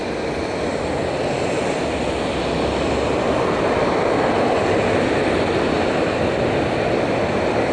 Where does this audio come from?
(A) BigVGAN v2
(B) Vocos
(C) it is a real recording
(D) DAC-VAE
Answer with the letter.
C